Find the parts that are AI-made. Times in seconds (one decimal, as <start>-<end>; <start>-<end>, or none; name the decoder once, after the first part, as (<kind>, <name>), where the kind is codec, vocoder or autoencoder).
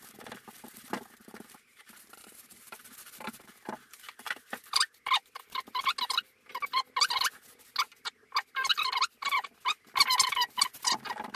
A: 1.2-4.1 (vocoder, BigVGAN v2)